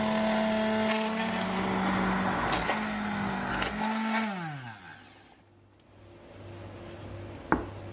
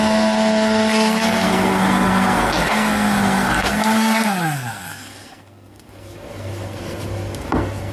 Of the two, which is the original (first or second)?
first